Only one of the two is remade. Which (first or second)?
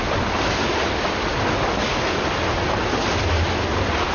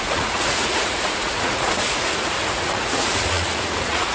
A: second